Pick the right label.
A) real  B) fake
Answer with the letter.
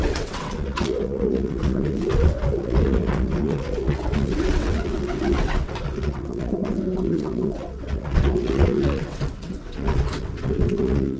B